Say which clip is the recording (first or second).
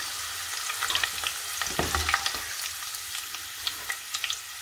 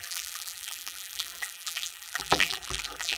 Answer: first